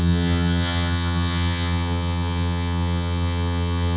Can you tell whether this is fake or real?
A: fake